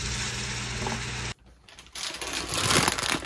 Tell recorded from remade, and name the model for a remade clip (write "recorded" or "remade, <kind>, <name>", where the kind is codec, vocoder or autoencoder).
recorded